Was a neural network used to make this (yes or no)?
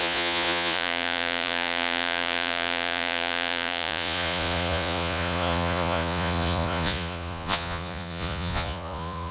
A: yes